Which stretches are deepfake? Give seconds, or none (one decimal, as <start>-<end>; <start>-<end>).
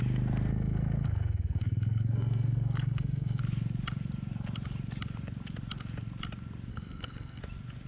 0.5-3.4; 6.7-7.4